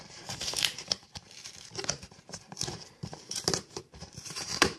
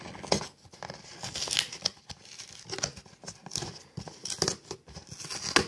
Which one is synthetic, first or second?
first